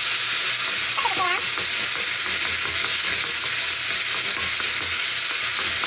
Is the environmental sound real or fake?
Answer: real